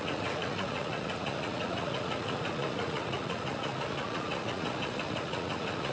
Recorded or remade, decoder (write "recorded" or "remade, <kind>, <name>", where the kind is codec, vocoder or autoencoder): remade, vocoder, Vocos